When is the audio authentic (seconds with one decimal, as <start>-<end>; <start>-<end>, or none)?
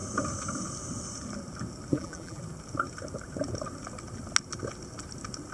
0.0-1.9; 2.4-5.5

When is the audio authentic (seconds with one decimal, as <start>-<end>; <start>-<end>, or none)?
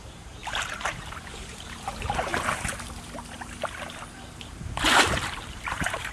2.3-4.5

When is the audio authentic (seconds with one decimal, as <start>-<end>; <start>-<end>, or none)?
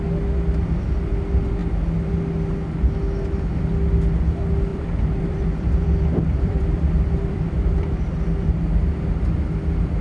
0.0-4.7; 8.4-10.0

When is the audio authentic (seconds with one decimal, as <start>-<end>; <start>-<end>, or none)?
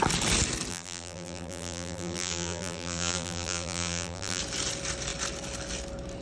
0.0-0.7; 4.4-6.2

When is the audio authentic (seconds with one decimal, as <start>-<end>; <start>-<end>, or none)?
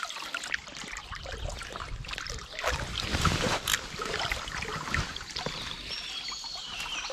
0.0-0.8; 1.5-3.1; 4.2-7.1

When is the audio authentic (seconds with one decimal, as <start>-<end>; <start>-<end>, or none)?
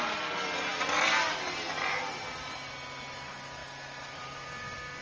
0.0-3.6; 4.5-5.0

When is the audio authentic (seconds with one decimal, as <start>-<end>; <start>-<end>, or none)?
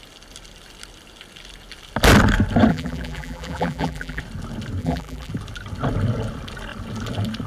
0.0-2.7; 4.2-4.8; 5.3-7.5